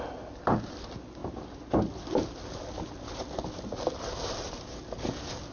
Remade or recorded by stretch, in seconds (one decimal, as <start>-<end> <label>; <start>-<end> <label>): 0.0-5.5 recorded